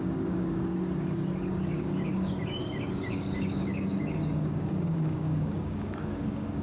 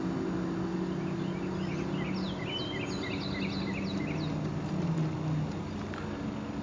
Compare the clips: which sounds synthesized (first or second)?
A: first